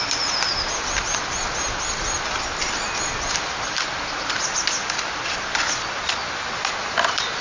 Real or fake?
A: real